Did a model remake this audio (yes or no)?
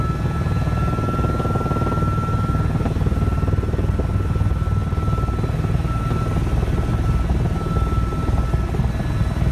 no